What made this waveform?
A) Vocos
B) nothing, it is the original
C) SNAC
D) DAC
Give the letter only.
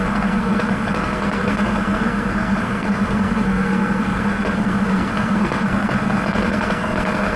C